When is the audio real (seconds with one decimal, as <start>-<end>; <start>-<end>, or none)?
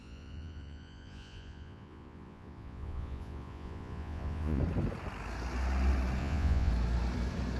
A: 4.6-6.2; 6.7-7.6